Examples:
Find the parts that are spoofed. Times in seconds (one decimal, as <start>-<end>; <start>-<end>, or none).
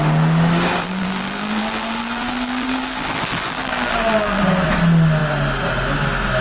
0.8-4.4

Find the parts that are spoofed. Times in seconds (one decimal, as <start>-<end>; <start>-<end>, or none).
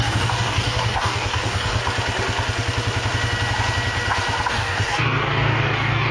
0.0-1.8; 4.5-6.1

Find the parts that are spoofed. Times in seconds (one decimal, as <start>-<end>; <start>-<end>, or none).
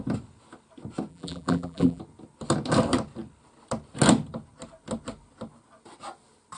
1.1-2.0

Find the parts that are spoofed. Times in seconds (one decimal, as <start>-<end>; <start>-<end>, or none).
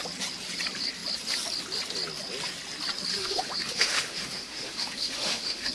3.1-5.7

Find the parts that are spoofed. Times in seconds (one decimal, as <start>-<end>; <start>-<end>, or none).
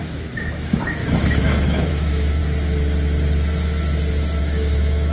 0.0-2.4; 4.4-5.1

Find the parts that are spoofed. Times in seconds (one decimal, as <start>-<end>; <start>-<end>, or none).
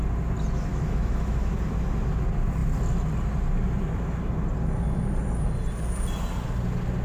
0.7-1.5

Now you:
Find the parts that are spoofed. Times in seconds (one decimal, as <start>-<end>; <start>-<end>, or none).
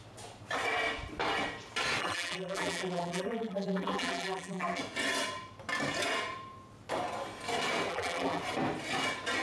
2.0-4.8; 7.9-8.4